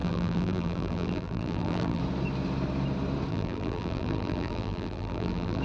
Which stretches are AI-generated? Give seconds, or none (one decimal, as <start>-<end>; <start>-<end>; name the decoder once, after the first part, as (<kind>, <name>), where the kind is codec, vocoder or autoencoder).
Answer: 0.0-2.0 (vocoder, BigVGAN v2); 3.3-5.6

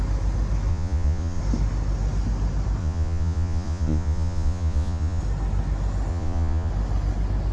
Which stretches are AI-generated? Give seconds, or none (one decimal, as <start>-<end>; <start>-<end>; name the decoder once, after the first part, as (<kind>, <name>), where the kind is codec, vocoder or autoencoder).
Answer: 0.7-1.4 (vocoder, Vocos); 2.8-5.2; 6.1-6.7

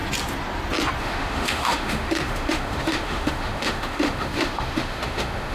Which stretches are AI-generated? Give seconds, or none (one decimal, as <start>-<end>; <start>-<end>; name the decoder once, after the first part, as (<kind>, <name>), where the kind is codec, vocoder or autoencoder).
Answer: 1.0-5.5 (autoencoder, DAC-VAE)